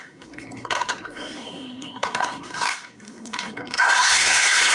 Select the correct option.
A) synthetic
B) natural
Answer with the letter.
A